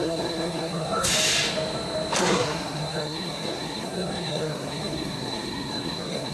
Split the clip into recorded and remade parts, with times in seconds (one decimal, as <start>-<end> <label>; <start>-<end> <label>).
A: 0.0-1.1 remade; 1.1-2.2 recorded; 2.2-6.3 remade